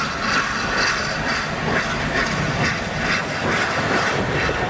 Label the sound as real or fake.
real